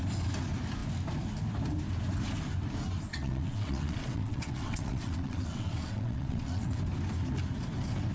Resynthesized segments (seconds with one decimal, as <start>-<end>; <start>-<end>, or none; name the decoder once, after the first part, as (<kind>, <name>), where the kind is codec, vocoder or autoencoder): 3.1-6.8 (vocoder, WaveNeXt)